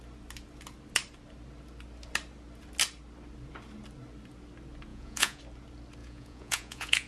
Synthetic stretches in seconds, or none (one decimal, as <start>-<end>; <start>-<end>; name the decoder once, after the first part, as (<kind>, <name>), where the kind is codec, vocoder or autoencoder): 4.9-5.4 (vocoder, Vocos); 6.0-7.1

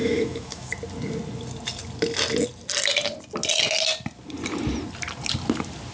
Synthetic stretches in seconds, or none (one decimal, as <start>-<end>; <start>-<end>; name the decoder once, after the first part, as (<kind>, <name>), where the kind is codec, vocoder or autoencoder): 0.0-0.7 (autoencoder, DAC-VAE)

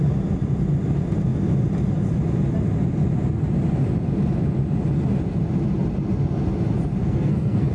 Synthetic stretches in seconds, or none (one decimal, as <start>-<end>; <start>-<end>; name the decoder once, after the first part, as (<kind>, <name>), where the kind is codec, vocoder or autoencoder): 7.0-7.7 (codec, SNAC)

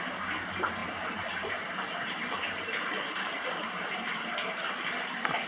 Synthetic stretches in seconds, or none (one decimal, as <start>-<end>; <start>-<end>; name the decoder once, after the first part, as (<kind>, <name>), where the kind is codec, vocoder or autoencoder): 0.8-4.1 (vocoder, BigVGAN v2)

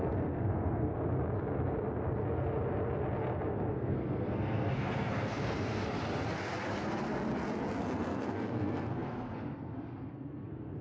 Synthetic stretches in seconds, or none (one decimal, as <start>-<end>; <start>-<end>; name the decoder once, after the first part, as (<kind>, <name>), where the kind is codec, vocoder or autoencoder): 0.0-0.9 (codec, SNAC); 3.7-5.8; 7.8-10.8